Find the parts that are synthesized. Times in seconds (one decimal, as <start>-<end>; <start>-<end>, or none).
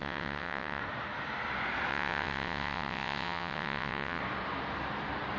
0.0-0.8; 1.9-4.2